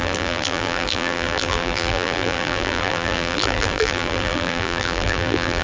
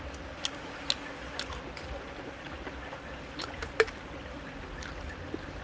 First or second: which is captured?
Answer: second